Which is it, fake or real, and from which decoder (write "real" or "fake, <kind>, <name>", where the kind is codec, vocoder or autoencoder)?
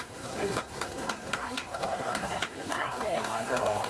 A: fake, codec, SNAC